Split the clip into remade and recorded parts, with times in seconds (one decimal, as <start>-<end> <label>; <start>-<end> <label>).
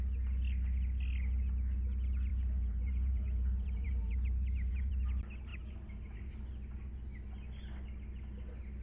0.0-2.3 recorded; 2.3-4.9 remade; 4.9-5.5 recorded; 5.5-6.4 remade; 6.4-8.8 recorded